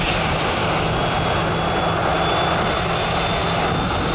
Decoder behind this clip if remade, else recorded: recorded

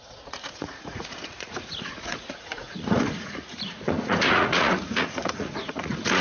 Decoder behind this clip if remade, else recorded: remade, vocoder, Vocos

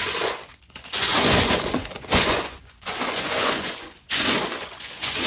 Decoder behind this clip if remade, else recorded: remade, vocoder, Vocos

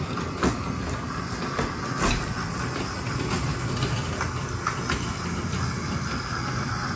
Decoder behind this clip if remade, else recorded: recorded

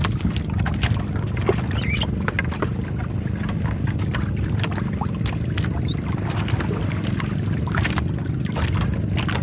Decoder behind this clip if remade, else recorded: recorded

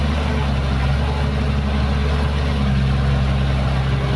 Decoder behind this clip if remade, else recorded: recorded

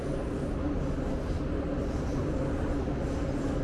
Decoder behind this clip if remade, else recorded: recorded